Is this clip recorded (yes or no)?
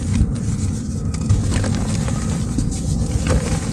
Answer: yes